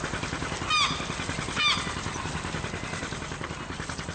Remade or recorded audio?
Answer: recorded